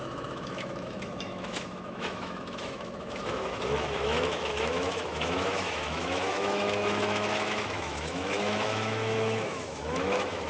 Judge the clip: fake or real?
fake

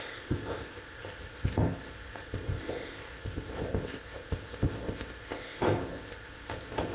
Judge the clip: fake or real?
fake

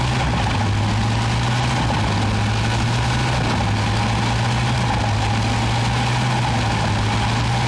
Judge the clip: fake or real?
real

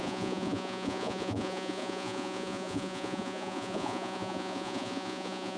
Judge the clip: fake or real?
fake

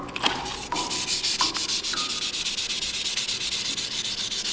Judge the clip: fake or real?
real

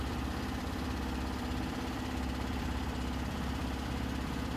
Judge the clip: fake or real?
fake